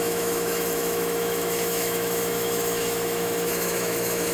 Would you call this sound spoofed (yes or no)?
yes